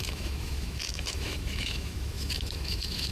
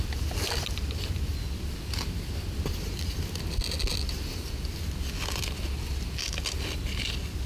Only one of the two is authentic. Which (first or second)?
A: second